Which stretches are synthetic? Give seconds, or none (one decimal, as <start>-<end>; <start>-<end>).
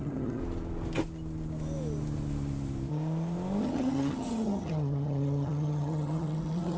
0.0-0.4; 3.6-6.8